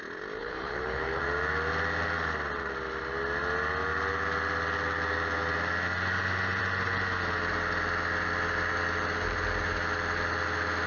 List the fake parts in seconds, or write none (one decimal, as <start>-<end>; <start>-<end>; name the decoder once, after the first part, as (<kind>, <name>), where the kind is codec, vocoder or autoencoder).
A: 0.4-1.2 (codec, HILCodec)